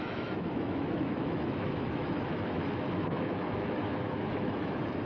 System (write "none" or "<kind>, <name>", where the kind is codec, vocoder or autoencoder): autoencoder, DAC-VAE